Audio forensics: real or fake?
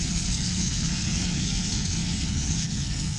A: fake